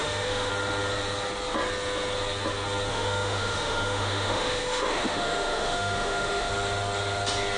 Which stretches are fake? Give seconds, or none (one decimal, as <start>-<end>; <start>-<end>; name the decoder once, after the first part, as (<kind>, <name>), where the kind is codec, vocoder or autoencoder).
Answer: 0.0-0.5 (autoencoder, DAC-VAE); 2.9-6.5